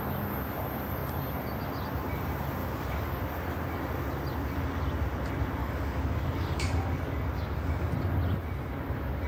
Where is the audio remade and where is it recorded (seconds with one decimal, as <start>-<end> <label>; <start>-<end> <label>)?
0.0-2.6 recorded; 2.6-3.2 remade; 3.2-5.6 recorded; 5.6-7.9 remade; 7.9-9.3 recorded